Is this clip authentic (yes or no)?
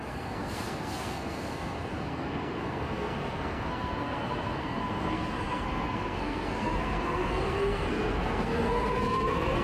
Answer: no